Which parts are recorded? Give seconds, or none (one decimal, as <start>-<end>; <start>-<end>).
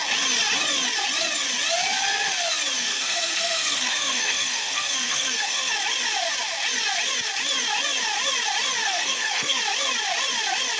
0.0-2.9; 5.7-8.8; 9.6-10.8